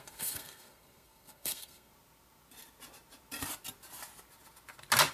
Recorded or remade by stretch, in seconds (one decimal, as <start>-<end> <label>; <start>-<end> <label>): 0.0-1.9 remade; 1.9-5.1 recorded